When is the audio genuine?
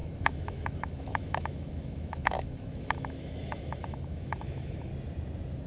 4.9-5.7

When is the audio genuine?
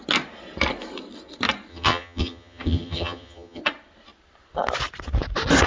0.0-1.7; 3.6-5.7